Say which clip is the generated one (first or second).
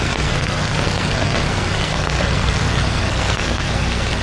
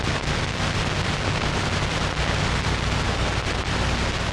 first